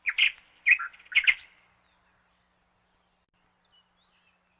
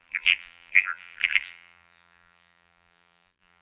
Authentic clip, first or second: first